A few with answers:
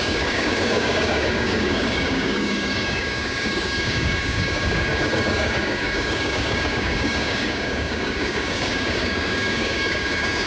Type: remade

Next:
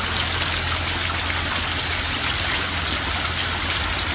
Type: recorded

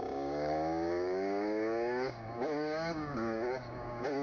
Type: remade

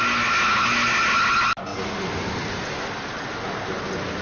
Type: recorded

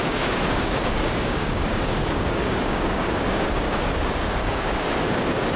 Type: remade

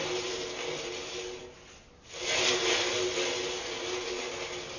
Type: recorded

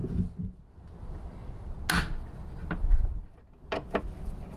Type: recorded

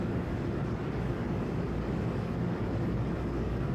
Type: remade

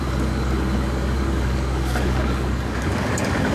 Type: remade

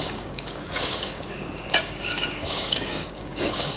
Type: remade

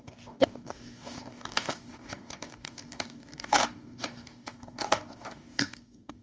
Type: remade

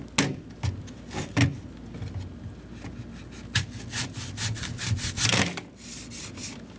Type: recorded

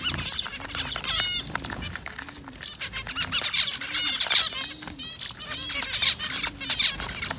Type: recorded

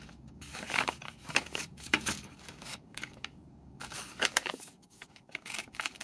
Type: remade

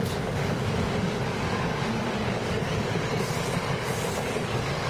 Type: remade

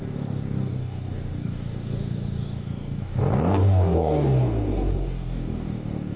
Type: remade